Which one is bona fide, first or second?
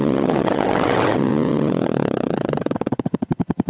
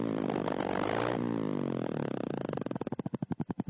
second